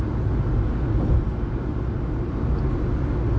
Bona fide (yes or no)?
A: yes